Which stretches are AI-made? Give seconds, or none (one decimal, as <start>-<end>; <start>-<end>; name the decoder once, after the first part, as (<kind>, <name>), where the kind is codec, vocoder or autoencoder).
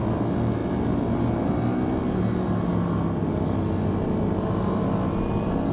none